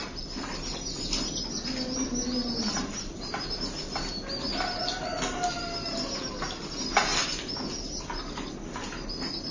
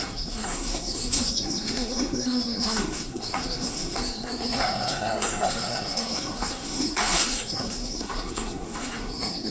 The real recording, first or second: first